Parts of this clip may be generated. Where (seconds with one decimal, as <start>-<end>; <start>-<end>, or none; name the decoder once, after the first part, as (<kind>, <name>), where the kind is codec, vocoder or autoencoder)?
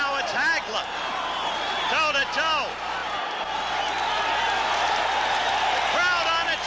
none